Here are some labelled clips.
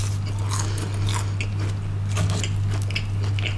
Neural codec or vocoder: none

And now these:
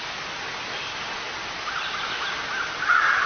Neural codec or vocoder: none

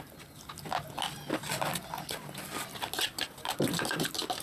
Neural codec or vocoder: none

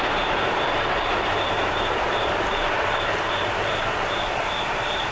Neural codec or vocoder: vocoder, BigVGAN v2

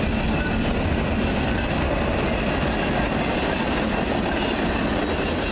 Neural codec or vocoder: none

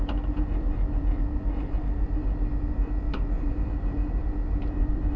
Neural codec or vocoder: vocoder, BigVGAN v2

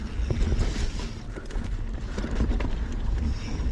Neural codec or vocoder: vocoder, BigVGAN v2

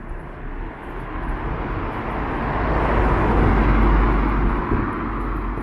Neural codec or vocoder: none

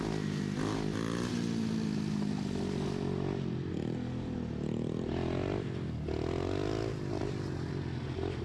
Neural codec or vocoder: none